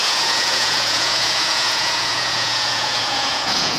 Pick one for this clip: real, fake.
fake